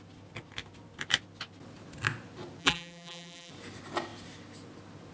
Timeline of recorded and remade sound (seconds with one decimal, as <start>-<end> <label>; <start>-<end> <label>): 0.0-2.6 recorded; 2.6-3.5 remade; 3.5-5.1 recorded